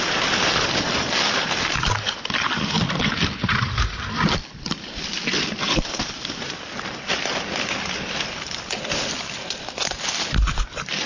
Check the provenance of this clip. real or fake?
real